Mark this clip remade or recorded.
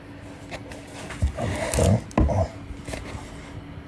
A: recorded